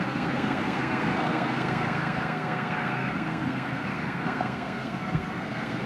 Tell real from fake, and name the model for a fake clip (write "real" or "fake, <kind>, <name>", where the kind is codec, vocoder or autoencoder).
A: fake, codec, SNAC